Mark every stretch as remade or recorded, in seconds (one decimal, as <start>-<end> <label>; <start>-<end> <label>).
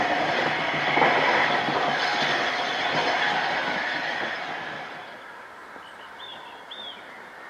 0.0-7.5 recorded